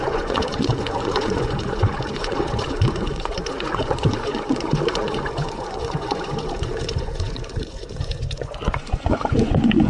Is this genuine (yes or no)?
no